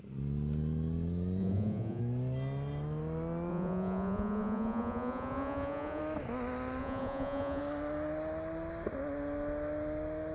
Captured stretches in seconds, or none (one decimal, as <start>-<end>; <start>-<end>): 0.0-1.4; 2.0-3.5; 6.0-6.8; 7.6-10.3